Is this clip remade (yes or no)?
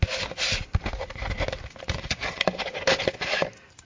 no